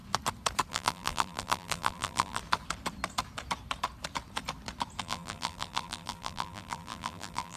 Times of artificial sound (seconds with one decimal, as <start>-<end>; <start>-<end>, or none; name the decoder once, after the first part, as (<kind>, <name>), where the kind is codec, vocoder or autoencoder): 0.7-2.4 (vocoder, BigVGAN v2); 5.0-7.6